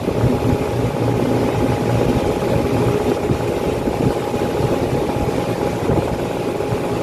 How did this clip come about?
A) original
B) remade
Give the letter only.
A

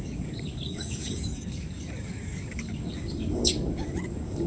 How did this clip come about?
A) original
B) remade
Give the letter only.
B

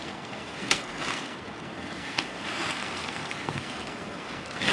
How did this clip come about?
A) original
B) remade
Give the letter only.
B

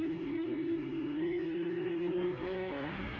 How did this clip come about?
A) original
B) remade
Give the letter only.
B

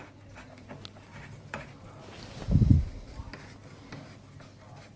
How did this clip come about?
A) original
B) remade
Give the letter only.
A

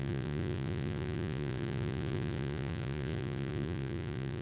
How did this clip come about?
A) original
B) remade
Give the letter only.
B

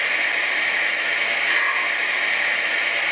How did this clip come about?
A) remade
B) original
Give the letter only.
B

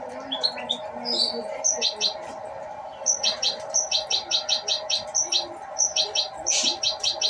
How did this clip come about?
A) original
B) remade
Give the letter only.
B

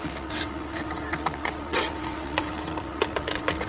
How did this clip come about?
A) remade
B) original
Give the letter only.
A